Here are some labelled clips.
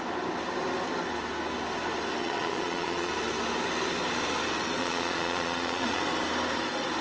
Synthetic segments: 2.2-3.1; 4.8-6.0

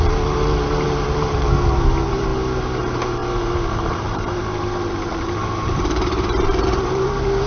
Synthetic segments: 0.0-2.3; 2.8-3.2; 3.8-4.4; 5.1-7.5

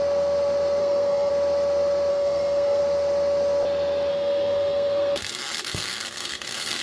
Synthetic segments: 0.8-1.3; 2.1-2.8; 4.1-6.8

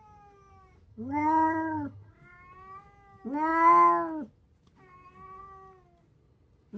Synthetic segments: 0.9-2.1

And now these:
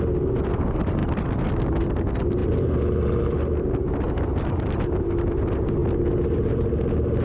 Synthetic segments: none

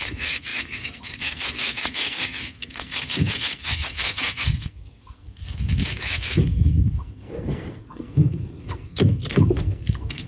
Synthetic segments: 0.0-10.3